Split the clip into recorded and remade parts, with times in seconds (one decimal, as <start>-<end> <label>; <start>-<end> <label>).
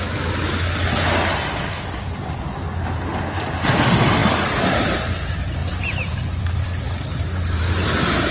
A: 0.0-4.2 recorded; 4.2-4.9 remade; 4.9-5.6 recorded; 5.6-7.9 remade; 7.9-8.3 recorded